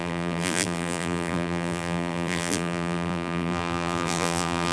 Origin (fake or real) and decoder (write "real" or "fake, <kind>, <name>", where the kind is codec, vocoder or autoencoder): fake, vocoder, BigVGAN v2